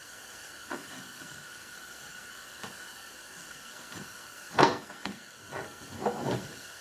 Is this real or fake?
fake